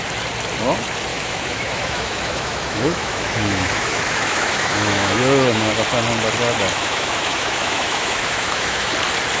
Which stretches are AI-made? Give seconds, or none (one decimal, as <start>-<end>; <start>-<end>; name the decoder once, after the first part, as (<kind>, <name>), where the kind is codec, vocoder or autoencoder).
1.1-5.7 (autoencoder, DAC-VAE); 6.7-8.9